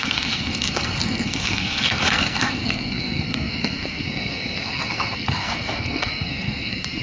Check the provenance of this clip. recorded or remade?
remade